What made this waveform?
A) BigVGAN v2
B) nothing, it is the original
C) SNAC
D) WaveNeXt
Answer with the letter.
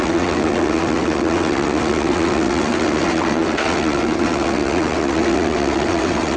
D